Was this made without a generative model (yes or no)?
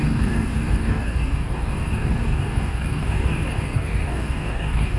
no